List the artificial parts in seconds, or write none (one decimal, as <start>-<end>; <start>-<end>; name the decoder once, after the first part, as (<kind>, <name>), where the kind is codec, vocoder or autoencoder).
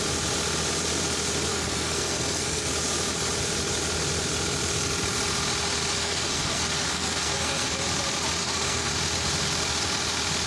1.5-2.7 (codec, SNAC); 6.0-7.8; 8.4-8.9